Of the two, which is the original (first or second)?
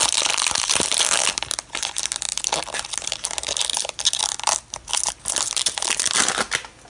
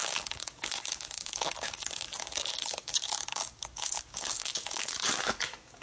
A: first